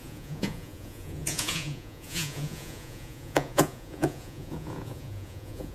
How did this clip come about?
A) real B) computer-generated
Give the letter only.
B